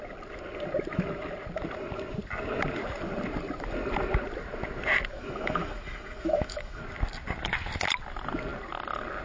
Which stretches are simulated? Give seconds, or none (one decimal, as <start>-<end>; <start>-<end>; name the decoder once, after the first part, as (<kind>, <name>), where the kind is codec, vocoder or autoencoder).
5.1-6.8 (autoencoder, DAC-VAE)